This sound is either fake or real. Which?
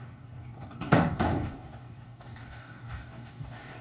fake